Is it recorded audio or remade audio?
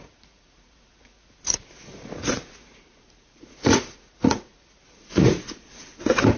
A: remade